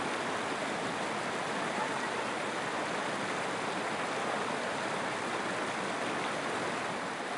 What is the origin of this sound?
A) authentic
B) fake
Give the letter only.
A